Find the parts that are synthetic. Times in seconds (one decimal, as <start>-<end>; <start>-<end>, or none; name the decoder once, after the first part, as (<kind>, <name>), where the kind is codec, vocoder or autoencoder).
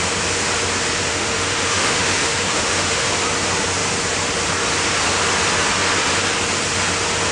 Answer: 1.1-3.1 (autoencoder, DAC-VAE)